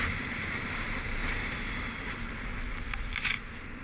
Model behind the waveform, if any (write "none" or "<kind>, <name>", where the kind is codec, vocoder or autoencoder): vocoder, BigVGAN v2